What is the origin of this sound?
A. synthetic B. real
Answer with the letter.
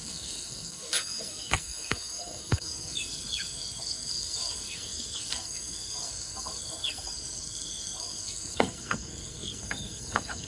A